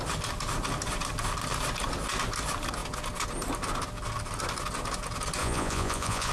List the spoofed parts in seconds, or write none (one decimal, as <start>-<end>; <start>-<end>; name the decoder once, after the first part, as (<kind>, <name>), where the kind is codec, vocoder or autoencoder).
5.4-6.3 (vocoder, Vocos)